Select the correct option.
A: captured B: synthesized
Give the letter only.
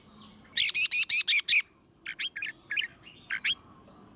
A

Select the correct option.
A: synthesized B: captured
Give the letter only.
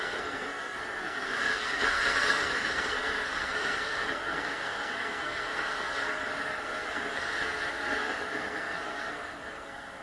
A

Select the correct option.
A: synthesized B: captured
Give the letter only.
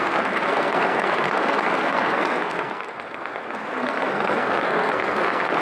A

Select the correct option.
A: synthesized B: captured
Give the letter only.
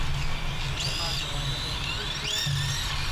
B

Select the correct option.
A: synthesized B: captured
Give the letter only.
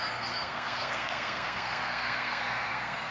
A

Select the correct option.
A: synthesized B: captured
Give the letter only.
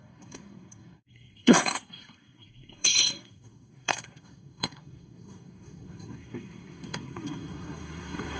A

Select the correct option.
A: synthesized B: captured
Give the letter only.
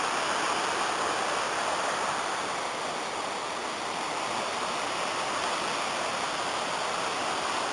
B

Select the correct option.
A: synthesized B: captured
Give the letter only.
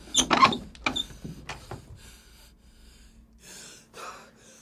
B